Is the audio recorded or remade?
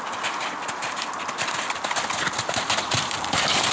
recorded